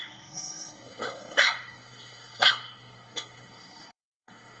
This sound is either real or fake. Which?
fake